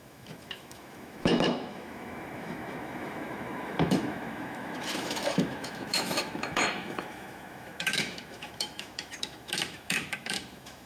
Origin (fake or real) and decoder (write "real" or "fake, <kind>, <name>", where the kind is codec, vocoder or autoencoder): fake, autoencoder, DAC-VAE